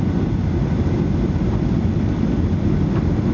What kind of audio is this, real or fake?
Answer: real